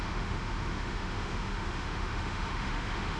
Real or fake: fake